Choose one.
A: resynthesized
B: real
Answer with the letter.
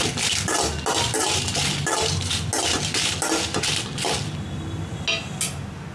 B